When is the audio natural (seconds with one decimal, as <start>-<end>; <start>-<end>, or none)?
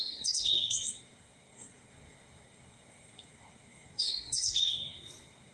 none